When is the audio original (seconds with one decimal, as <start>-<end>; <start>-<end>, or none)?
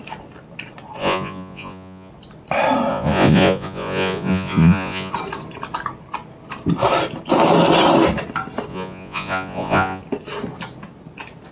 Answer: 0.0-1.0; 2.1-2.9; 5.1-8.7; 10.0-11.5